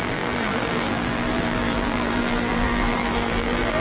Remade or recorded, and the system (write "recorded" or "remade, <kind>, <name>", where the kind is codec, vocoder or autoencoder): remade, vocoder, BigVGAN v2